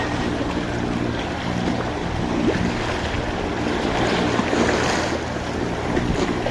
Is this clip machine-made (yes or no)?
no